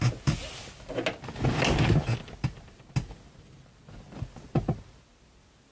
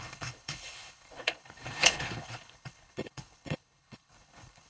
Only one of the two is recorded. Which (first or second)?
first